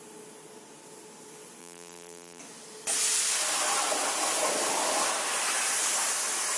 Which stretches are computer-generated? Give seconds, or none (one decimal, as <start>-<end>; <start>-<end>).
1.6-2.4